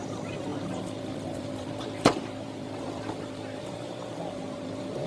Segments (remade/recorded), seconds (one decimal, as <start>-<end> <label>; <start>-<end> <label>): 0.0-5.1 remade